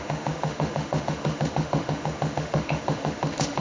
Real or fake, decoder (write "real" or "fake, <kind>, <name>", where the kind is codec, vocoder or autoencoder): fake, autoencoder, DAC-VAE